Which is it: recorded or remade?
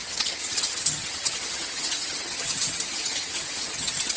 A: remade